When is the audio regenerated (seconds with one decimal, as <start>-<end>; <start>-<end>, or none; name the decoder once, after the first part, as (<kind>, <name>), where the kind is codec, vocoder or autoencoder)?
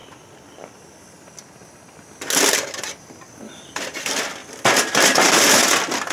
none